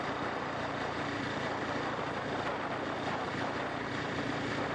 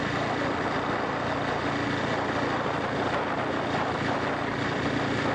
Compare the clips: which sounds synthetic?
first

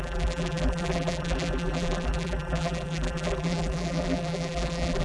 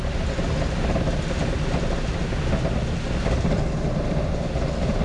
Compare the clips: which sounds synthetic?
first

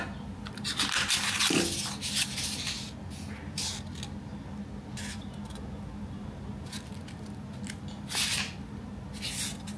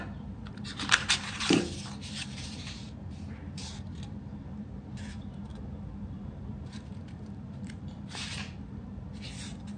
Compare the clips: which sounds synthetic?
second